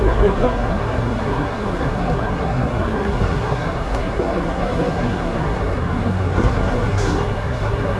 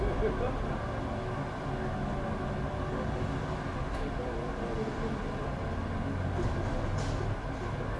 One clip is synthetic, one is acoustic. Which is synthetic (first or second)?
first